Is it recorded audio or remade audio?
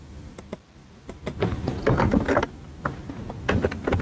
recorded